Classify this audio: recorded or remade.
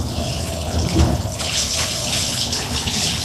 remade